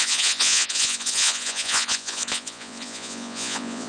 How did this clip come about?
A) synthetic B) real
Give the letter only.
A